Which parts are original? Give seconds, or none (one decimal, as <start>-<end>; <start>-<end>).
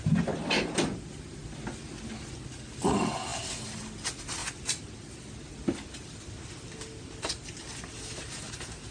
0.0-8.9